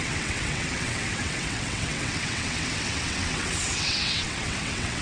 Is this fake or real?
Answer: fake